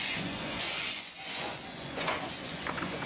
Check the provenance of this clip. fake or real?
fake